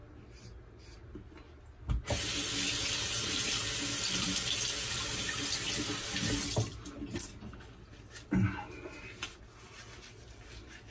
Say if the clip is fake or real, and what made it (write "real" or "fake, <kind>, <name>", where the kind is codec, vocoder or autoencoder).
real